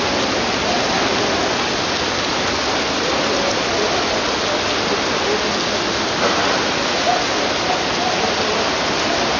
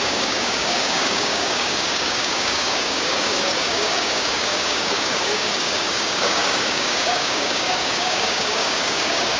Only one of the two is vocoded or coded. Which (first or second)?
second